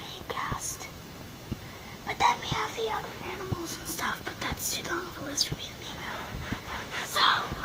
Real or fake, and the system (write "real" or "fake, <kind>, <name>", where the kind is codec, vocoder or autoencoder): fake, autoencoder, DAC-VAE